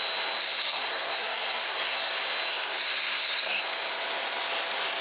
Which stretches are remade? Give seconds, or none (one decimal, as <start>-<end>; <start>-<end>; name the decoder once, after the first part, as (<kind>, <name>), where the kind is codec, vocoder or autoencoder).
0.4-2.1 (codec, SNAC); 2.5-3.6